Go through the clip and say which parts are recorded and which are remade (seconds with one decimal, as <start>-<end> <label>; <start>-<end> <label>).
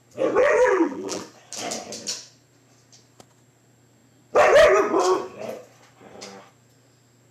0.0-0.4 recorded; 0.4-1.2 remade; 1.2-7.3 recorded